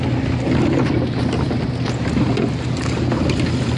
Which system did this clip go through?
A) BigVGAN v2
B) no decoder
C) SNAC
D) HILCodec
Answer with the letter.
B